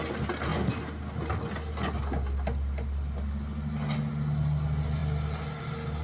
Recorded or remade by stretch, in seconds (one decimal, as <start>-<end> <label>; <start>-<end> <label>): 0.0-6.0 recorded

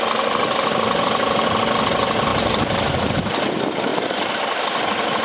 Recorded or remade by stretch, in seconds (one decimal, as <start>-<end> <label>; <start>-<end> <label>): 0.0-2.3 recorded; 2.3-3.5 remade; 3.5-3.9 recorded; 3.9-4.4 remade; 4.4-5.2 recorded